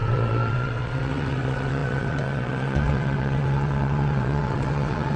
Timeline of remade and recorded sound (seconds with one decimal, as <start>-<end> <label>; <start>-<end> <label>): 0.0-5.2 remade